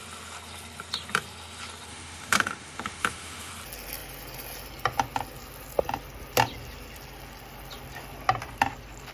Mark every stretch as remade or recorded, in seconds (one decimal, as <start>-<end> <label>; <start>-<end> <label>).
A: 0.0-1.9 recorded; 1.9-3.5 remade; 3.5-9.1 recorded